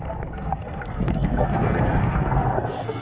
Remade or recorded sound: remade